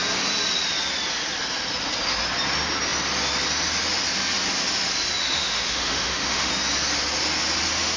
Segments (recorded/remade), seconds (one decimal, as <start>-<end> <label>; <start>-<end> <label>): 0.0-5.2 recorded; 5.2-6.5 remade; 6.5-8.0 recorded